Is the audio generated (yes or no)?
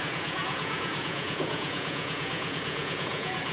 yes